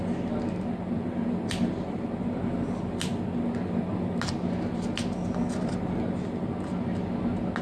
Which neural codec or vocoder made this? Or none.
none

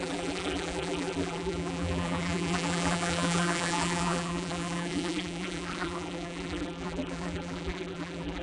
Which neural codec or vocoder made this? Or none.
vocoder, BigVGAN v2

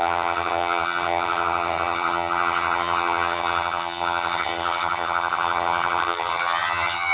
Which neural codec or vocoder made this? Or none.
vocoder, HiFi-GAN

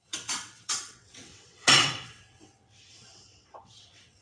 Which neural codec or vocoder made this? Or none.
vocoder, WaveNeXt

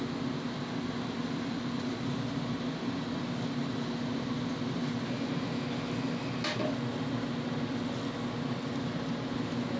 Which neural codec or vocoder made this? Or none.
none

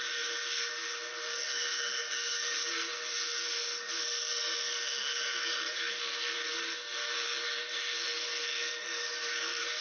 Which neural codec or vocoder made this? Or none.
codec, SNAC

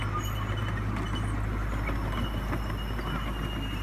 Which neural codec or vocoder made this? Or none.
none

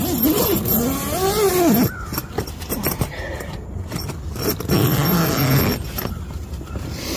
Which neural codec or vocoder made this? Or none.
none